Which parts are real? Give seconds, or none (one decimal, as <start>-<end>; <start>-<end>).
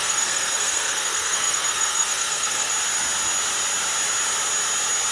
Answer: 2.7-5.1